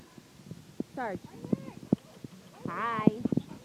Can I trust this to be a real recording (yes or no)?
yes